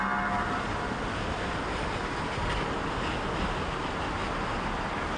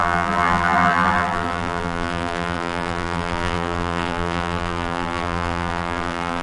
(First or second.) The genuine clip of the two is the first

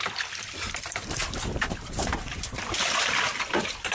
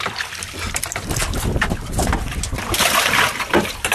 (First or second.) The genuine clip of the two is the second